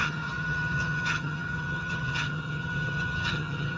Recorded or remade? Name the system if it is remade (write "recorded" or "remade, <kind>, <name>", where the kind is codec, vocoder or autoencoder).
remade, vocoder, HiFi-GAN